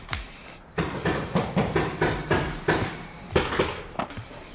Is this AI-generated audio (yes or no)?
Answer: yes